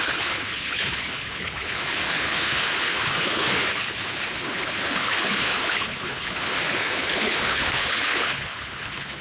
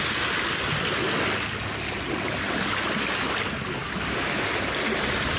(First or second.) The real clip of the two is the second